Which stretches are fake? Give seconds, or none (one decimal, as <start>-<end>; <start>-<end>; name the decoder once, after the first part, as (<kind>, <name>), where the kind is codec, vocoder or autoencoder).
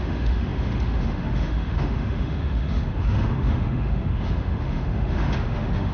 0.0-5.9 (autoencoder, DAC-VAE)